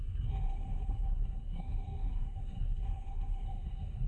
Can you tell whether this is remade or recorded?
remade